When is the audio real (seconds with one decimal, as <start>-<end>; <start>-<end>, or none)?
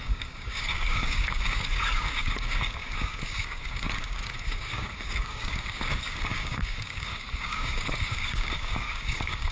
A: none